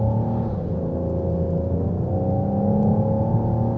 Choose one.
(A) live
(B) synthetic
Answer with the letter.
A